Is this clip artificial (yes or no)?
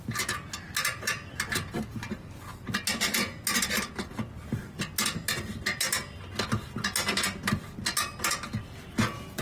no